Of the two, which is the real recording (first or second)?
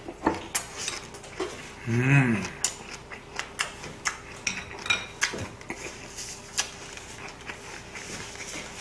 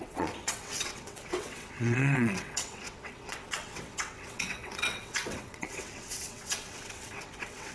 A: first